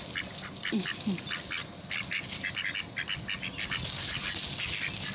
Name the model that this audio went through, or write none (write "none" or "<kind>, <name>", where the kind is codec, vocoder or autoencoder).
none